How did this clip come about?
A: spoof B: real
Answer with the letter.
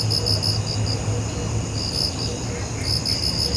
B